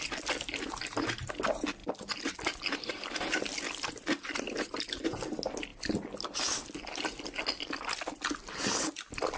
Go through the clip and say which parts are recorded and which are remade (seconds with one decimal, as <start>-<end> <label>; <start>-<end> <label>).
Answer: 0.0-9.4 recorded